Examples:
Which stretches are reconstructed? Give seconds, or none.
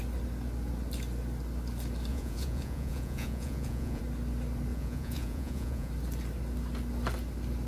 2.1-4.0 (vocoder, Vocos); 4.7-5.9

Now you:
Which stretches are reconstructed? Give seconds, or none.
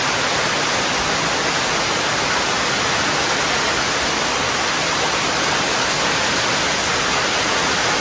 none